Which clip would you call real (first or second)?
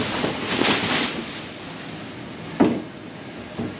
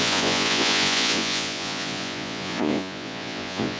first